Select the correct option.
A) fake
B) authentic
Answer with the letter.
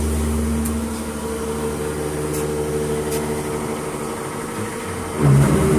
B